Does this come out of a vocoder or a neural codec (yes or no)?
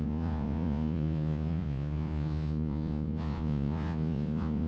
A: yes